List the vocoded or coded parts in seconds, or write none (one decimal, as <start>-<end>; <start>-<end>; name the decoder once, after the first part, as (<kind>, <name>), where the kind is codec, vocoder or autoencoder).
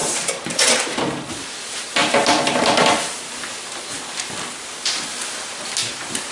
0.0-1.0 (vocoder, BigVGAN v2); 5.8-6.3